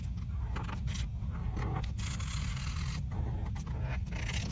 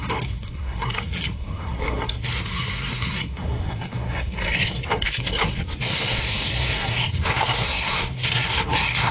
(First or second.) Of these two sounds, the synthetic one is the second